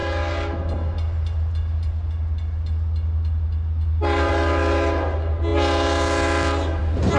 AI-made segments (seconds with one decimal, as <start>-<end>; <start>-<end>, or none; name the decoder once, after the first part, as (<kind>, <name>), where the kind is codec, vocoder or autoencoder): none